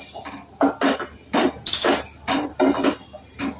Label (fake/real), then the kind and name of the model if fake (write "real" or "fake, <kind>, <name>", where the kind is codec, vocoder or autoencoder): real